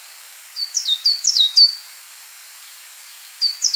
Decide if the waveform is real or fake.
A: fake